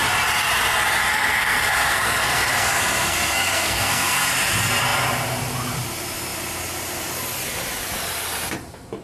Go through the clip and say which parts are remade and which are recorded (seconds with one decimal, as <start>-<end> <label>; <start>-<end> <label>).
0.0-1.1 recorded; 1.1-4.3 remade; 4.3-9.0 recorded